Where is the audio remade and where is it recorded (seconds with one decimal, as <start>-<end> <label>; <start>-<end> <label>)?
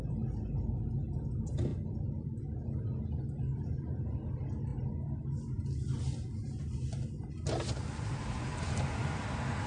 0.0-3.5 recorded; 3.5-4.3 remade; 4.3-9.7 recorded